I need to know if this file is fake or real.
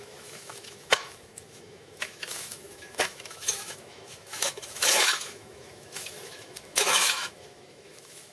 fake